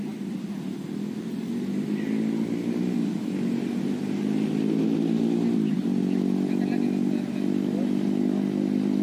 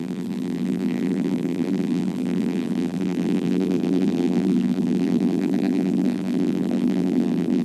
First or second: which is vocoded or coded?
second